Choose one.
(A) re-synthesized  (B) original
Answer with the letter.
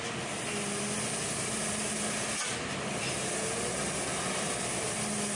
B